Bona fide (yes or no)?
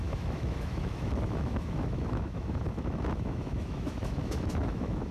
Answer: no